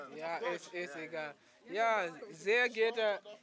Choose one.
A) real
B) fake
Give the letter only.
A